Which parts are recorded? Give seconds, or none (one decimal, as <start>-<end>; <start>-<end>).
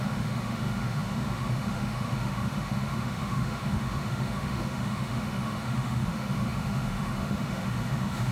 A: none